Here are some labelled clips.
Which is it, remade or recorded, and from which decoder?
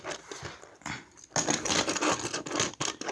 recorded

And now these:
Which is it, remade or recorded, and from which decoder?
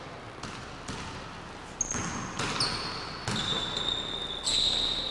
recorded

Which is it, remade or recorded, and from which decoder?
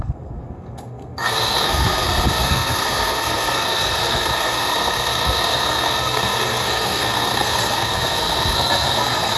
remade, codec, SNAC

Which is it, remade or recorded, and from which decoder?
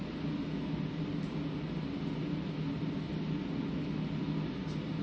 recorded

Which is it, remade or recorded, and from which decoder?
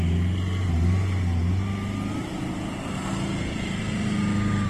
recorded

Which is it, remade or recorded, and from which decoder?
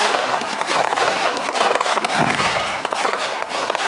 remade, codec, SNAC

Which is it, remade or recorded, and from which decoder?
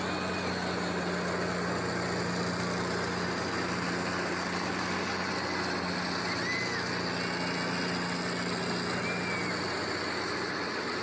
recorded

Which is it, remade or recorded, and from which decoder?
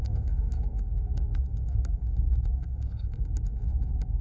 remade, codec, SNAC